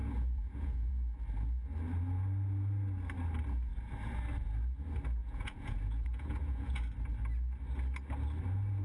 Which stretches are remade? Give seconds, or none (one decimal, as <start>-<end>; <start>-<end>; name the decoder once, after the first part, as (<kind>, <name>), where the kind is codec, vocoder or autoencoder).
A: 0.0-0.9 (vocoder, Vocos); 5.2-6.8